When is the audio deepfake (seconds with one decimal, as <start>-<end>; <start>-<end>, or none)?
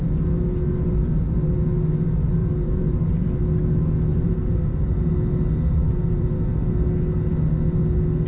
2.4-3.4; 4.1-5.1; 5.7-6.3